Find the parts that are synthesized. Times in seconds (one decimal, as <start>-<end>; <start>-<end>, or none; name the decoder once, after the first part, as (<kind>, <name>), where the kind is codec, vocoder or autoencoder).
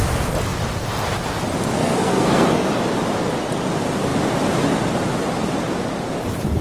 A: 1.8-2.7 (codec, SNAC)